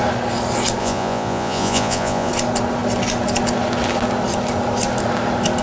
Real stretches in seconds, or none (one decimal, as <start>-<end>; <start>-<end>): 0.0-0.8; 2.3-5.6